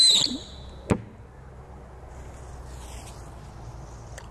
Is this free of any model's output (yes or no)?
yes